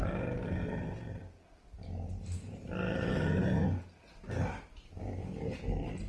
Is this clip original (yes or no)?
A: yes